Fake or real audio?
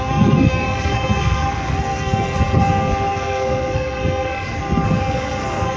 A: fake